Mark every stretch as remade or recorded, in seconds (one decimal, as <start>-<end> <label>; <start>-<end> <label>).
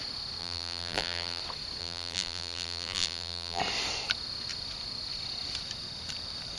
0.0-0.4 recorded; 0.4-1.4 remade; 1.4-1.8 recorded; 1.8-3.6 remade; 3.6-6.6 recorded